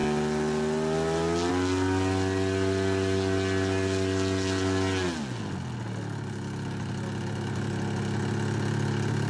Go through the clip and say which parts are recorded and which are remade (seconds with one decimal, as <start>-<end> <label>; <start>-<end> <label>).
0.0-9.3 recorded